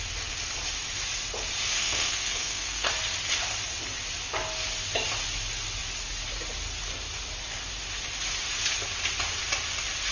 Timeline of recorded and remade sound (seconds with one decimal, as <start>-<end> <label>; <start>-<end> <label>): 0.0-1.8 recorded; 1.8-2.9 remade; 2.9-10.1 recorded